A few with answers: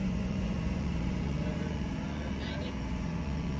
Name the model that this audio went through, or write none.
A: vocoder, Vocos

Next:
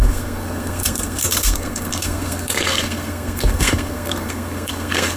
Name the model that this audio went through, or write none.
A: codec, SNAC